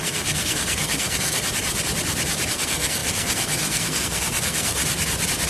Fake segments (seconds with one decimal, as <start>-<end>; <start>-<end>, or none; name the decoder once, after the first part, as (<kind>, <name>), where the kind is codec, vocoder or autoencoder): 0.0-1.4 (codec, SNAC); 2.5-4.8